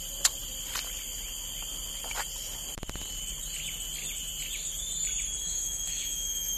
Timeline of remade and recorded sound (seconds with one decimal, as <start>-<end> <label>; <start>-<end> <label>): 0.0-5.4 recorded; 5.4-6.6 remade